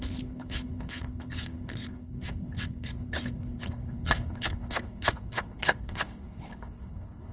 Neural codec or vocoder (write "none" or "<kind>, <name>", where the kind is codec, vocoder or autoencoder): codec, HILCodec